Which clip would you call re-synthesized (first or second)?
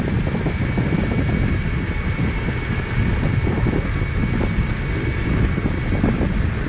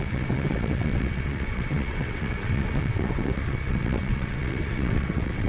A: second